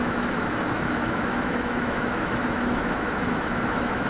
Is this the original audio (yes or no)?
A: no